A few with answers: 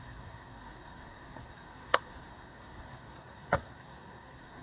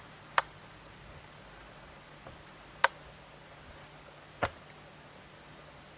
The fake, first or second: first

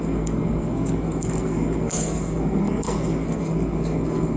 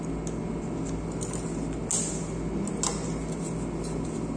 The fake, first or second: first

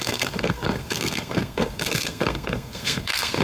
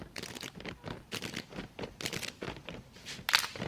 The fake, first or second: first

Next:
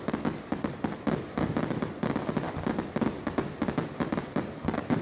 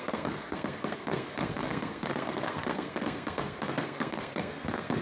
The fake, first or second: second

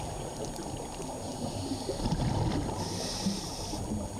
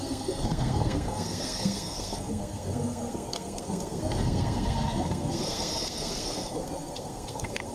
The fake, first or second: second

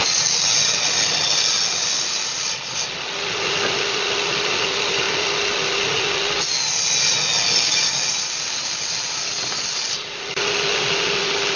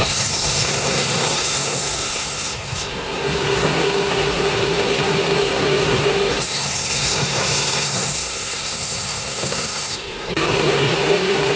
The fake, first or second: second